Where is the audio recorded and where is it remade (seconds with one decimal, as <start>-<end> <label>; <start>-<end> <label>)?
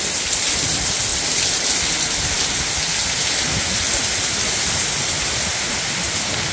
0.0-6.5 recorded